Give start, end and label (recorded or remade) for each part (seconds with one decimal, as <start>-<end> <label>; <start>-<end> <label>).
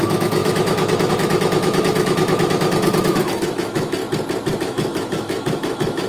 0.0-4.0 remade; 4.0-4.6 recorded; 4.6-6.1 remade